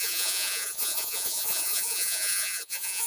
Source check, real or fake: fake